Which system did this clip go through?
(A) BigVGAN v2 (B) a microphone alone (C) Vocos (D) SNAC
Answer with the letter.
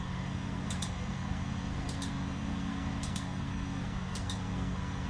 D